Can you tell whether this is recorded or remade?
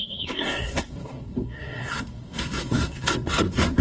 remade